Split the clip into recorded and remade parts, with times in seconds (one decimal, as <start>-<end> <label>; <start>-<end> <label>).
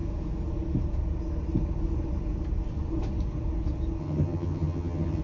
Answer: 0.0-4.0 recorded; 4.0-5.2 remade